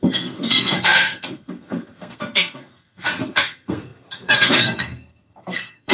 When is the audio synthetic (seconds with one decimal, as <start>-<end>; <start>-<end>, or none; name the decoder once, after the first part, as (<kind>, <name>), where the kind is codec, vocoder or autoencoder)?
0.0-5.9 (codec, SNAC)